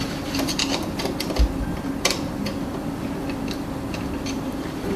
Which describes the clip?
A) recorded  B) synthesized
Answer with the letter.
B